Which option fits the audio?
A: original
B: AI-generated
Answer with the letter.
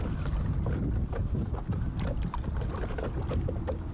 A